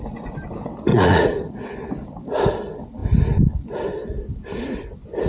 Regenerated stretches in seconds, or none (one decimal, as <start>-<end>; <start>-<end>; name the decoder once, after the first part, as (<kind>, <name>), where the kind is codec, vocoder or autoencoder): 0.9-1.5 (vocoder, Vocos)